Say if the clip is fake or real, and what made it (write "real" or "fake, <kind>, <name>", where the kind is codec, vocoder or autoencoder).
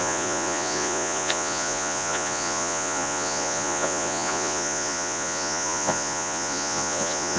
fake, vocoder, Vocos